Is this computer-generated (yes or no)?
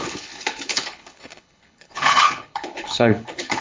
yes